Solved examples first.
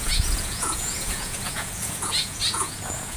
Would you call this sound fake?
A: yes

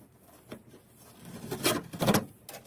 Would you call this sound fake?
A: no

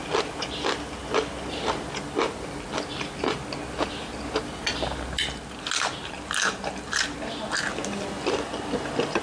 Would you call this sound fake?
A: no